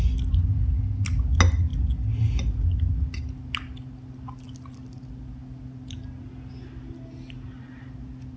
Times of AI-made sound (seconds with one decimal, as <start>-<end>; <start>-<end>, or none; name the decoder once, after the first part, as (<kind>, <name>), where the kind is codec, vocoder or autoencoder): none